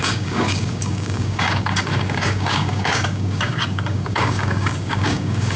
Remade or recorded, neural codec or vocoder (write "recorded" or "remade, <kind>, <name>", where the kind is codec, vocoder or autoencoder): remade, codec, DAC